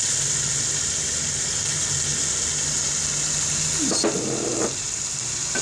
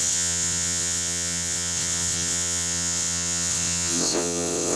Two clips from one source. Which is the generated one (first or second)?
second